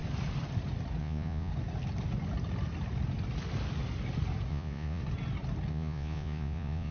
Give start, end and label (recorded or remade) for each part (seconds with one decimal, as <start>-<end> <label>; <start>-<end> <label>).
0.0-1.0 recorded; 1.0-1.5 remade; 1.5-4.5 recorded; 4.5-5.0 remade; 5.0-5.7 recorded; 5.7-6.9 remade